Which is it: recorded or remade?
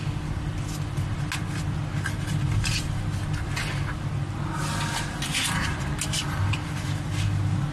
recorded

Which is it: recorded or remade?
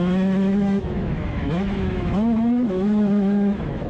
remade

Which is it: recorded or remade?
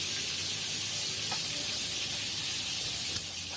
recorded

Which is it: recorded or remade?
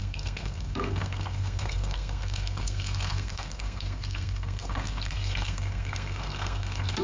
remade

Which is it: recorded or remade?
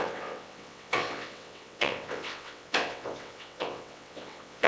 remade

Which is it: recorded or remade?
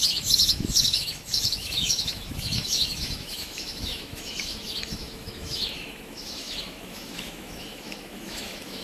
remade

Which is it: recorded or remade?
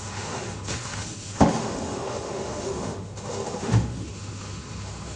remade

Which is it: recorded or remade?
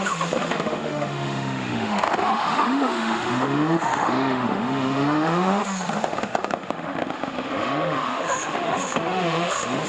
remade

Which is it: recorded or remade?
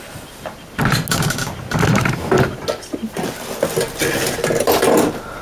recorded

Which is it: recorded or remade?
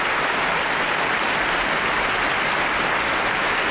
recorded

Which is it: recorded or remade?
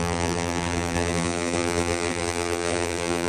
remade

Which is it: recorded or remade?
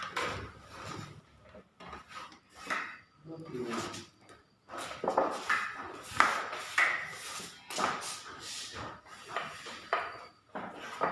recorded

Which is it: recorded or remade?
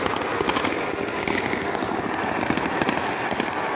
recorded